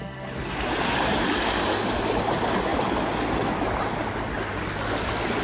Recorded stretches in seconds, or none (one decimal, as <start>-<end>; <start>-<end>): 0.0-5.4